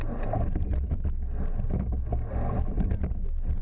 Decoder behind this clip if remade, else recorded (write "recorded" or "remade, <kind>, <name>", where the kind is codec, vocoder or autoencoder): recorded